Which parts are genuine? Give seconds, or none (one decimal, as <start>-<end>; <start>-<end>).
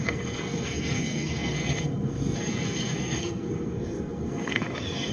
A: none